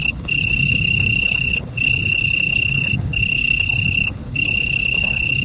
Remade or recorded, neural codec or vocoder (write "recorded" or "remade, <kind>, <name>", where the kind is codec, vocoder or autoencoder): remade, codec, HILCodec